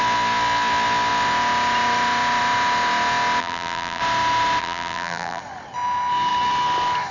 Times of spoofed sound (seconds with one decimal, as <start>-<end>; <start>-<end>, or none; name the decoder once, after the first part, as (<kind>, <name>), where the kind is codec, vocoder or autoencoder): 3.4-4.0 (vocoder, BigVGAN v2); 4.6-5.4

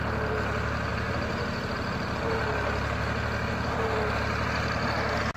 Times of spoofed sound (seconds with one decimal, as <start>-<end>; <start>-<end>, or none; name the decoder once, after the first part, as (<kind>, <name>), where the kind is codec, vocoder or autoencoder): 0.9-2.2 (vocoder, BigVGAN v2)

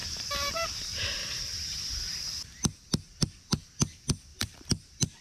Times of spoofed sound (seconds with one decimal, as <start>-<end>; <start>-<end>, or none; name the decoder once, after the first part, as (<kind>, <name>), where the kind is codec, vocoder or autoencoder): 0.0-1.4 (vocoder, BigVGAN v2); 4.3-5.2